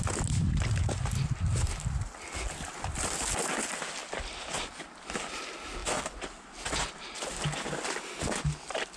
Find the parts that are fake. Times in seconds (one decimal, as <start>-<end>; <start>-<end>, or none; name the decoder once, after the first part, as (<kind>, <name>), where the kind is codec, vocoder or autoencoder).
none